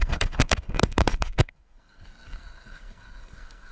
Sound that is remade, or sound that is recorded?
remade